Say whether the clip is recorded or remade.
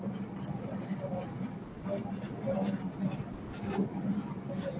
recorded